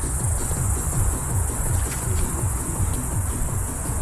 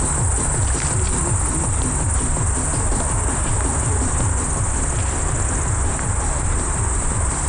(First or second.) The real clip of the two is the second